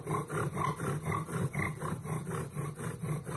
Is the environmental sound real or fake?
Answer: real